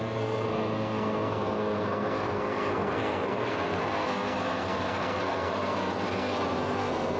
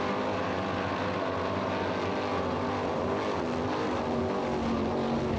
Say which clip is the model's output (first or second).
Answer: first